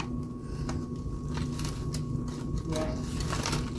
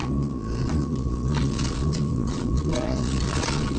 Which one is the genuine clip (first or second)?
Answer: first